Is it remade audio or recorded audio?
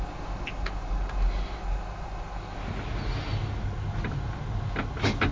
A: recorded